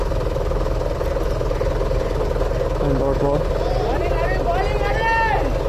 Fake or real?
real